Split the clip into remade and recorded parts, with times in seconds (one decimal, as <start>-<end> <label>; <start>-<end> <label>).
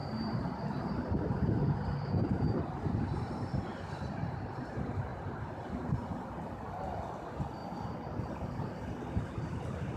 0.0-5.1 remade; 5.1-7.1 recorded; 7.1-7.6 remade; 7.6-9.2 recorded; 9.2-10.0 remade